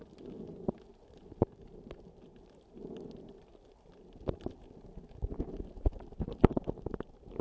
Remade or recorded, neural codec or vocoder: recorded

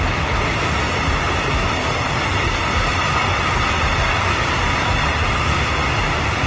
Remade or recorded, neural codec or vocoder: recorded